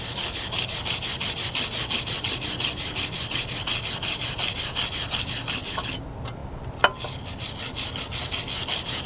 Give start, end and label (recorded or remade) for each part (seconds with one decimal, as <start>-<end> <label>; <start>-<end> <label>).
0.0-9.1 recorded